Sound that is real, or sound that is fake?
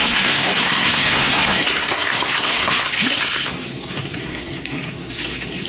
fake